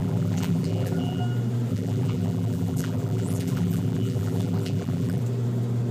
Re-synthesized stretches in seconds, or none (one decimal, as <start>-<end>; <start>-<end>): 0.0-1.2; 1.7-5.2